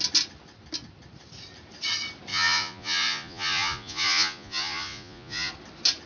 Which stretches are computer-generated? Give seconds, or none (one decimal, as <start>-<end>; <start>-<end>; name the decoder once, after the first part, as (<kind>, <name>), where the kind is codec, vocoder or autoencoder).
2.3-5.5 (vocoder, Vocos)

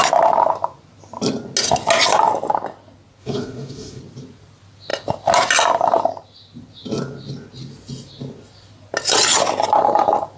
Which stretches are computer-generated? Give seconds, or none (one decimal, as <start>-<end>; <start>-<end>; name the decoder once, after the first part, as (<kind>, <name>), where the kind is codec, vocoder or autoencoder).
3.2-4.0 (autoencoder, DAC-VAE)

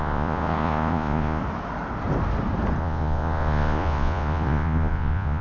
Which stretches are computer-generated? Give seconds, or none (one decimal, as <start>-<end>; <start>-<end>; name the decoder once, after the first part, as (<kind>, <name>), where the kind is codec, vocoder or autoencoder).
0.0-1.4 (vocoder, Vocos); 2.8-5.4

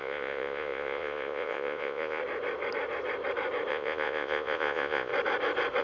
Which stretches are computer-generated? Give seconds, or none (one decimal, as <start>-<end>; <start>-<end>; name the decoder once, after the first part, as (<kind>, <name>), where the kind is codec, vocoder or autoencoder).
0.0-2.2 (vocoder, Vocos); 3.7-5.1